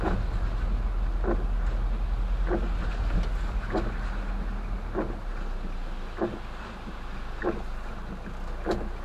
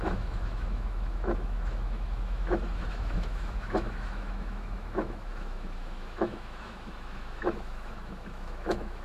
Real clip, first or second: first